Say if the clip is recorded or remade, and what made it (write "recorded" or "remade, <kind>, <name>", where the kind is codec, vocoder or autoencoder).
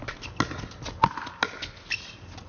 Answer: recorded